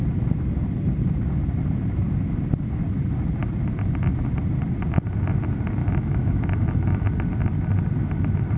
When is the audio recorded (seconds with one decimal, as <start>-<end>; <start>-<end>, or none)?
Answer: 0.0-5.8; 7.0-8.6